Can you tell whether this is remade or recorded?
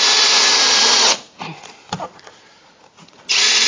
remade